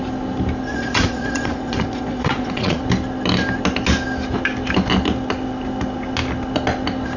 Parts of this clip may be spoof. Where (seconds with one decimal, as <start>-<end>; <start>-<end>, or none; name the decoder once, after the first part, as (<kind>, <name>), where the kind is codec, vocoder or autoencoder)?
0.7-2.8 (vocoder, Vocos)